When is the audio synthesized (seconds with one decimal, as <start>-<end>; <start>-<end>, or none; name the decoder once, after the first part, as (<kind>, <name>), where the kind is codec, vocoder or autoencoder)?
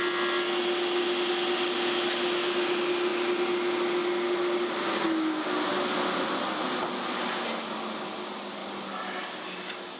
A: none